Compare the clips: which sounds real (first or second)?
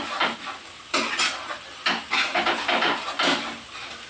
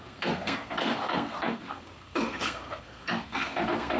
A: first